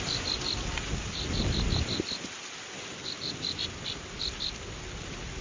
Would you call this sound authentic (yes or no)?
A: yes